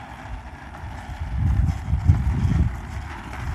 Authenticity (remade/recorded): recorded